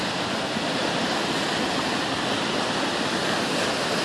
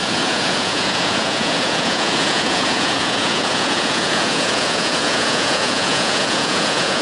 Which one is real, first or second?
first